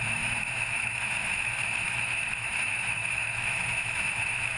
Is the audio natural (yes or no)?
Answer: no